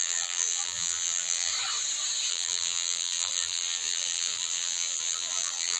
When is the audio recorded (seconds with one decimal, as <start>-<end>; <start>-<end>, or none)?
1.5-2.3